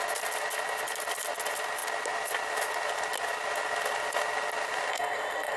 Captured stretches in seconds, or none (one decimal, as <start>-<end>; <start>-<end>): 0.0-4.9